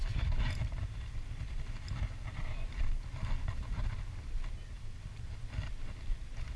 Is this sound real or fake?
real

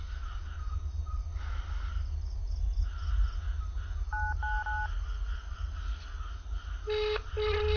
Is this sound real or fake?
real